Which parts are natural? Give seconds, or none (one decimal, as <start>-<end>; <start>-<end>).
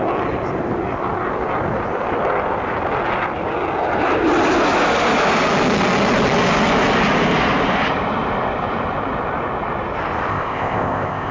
0.0-10.3